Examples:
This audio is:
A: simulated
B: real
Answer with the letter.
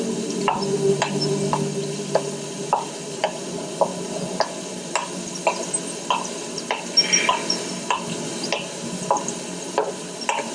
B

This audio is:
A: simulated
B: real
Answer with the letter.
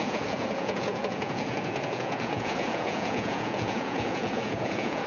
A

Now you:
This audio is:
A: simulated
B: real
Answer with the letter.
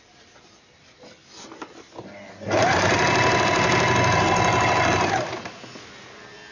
B